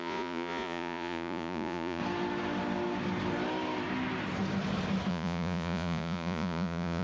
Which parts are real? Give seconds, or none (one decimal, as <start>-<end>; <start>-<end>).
2.0-5.1